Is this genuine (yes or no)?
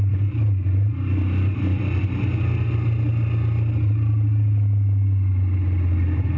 yes